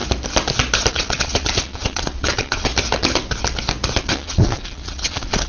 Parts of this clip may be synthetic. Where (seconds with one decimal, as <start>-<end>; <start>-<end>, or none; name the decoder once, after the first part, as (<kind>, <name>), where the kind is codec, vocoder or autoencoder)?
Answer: 0.9-2.7 (vocoder, WaveNeXt); 4.0-5.5